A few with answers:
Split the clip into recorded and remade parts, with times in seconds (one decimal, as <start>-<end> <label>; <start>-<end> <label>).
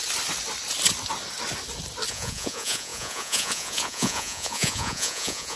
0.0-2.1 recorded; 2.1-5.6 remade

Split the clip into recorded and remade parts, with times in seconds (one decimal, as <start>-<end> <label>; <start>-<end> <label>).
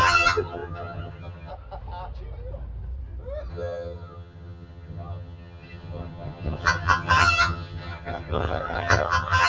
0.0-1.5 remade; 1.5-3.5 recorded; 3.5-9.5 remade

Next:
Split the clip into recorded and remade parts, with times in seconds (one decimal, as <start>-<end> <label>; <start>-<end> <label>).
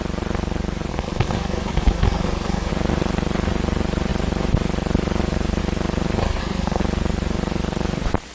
0.0-0.9 recorded; 0.9-2.7 remade; 2.7-6.2 recorded; 6.2-6.8 remade; 6.8-8.3 recorded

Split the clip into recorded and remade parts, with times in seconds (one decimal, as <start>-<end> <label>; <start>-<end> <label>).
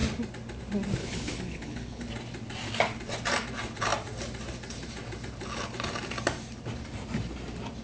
0.0-1.0 recorded; 1.0-2.1 remade; 2.1-7.8 recorded